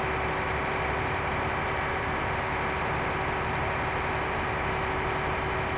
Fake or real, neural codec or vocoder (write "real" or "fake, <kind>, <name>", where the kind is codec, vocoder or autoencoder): real